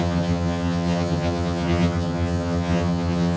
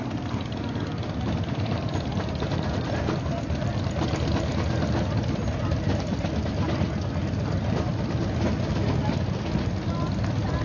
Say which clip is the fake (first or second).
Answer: first